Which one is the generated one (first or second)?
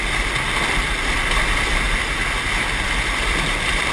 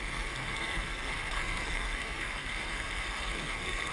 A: second